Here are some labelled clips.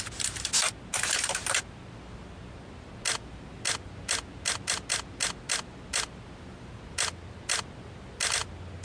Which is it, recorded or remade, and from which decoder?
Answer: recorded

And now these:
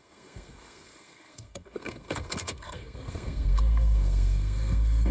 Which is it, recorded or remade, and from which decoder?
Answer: remade, codec, SNAC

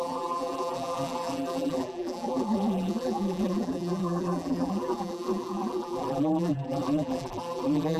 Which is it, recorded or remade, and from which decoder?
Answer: remade, vocoder, BigVGAN v2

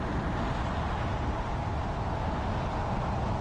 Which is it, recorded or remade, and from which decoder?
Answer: recorded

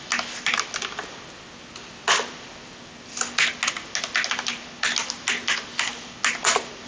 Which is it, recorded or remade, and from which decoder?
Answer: recorded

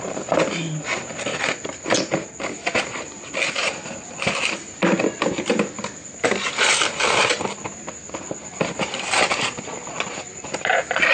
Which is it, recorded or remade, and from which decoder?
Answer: recorded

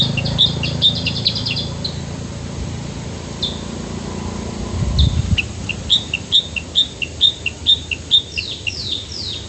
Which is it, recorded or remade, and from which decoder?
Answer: recorded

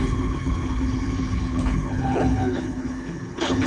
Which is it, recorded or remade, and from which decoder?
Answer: remade, codec, HILCodec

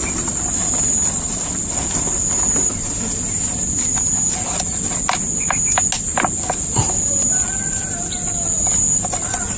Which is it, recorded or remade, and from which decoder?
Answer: recorded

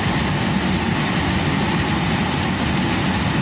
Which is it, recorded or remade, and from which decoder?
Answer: recorded